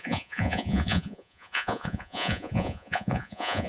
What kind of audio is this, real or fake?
fake